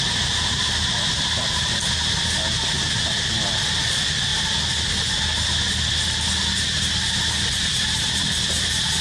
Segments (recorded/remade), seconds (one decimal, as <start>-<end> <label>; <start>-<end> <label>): 0.0-9.0 recorded